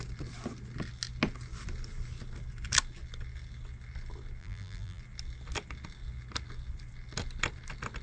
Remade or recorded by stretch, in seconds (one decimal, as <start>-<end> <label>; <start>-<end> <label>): 0.0-4.4 recorded; 4.4-5.0 remade; 5.0-8.0 recorded